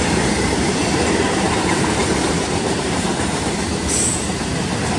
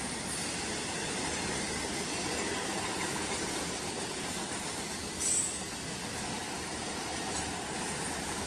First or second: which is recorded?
second